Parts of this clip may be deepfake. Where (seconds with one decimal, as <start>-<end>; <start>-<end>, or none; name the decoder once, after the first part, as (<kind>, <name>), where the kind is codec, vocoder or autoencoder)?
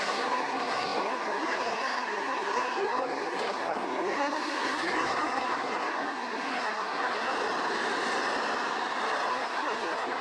0.0-7.3 (codec, SNAC); 9.3-10.2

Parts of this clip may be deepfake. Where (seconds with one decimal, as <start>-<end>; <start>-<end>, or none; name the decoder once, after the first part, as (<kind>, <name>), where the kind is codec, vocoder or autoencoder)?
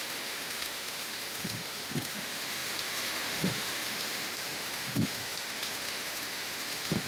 0.0-7.1 (autoencoder, DAC-VAE)